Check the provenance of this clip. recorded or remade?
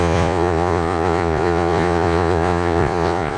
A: remade